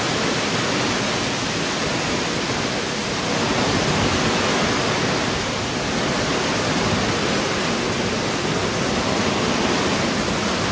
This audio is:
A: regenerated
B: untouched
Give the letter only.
B